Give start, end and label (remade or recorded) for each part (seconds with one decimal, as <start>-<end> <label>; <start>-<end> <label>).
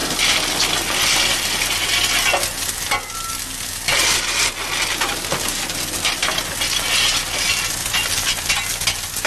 0.0-0.6 remade; 0.6-7.8 recorded; 7.8-8.5 remade; 8.5-9.3 recorded